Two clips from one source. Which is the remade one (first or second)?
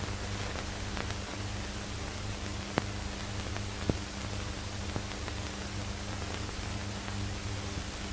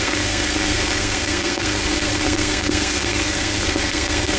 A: second